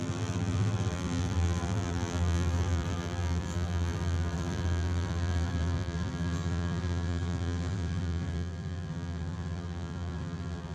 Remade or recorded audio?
remade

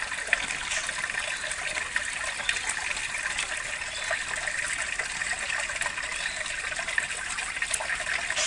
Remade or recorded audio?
recorded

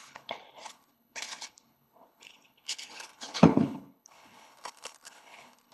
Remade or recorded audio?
remade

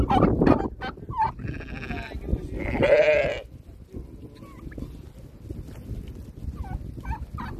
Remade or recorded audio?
recorded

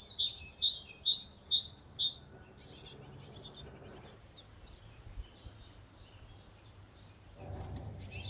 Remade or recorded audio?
remade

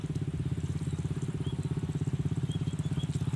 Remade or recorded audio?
recorded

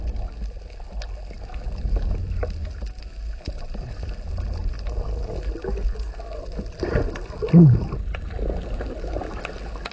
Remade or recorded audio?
recorded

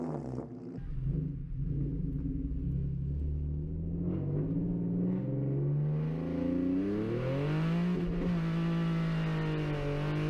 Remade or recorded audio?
recorded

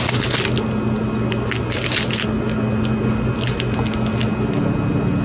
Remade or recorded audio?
recorded